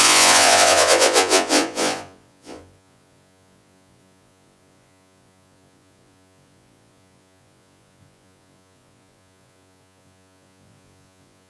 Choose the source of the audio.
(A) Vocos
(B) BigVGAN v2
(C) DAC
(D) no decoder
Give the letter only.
A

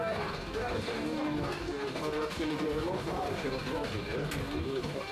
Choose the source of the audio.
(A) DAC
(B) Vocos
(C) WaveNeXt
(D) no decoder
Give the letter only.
A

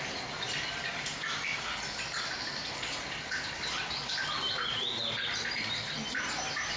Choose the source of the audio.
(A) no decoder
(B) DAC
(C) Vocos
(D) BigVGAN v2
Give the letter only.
A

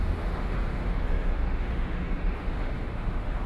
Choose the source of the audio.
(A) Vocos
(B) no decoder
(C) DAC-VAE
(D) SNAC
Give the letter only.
C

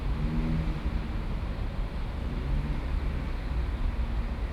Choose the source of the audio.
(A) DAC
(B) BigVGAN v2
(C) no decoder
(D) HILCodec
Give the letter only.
C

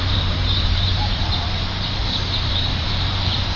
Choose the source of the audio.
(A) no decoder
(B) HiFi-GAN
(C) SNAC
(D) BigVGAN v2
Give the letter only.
D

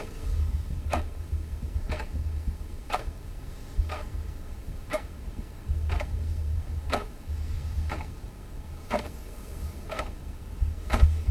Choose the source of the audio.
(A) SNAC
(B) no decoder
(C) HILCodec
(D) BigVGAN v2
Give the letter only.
A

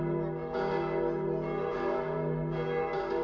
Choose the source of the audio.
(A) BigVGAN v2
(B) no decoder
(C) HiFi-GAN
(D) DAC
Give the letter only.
B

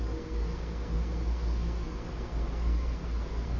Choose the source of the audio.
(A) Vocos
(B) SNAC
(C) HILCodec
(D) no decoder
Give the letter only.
B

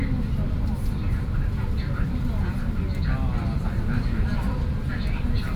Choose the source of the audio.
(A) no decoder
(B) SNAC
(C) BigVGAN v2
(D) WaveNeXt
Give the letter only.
A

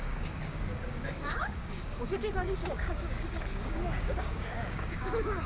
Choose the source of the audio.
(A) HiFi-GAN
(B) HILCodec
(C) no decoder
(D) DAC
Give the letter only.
D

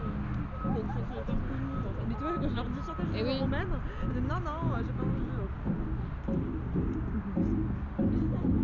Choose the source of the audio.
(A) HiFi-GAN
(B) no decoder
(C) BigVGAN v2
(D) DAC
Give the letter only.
B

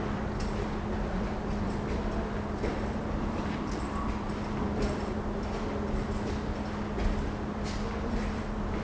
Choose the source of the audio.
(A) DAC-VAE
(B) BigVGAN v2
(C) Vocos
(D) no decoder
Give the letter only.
D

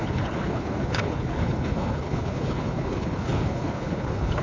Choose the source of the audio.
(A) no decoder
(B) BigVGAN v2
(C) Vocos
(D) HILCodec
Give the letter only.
D